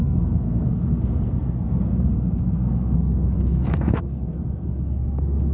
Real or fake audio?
fake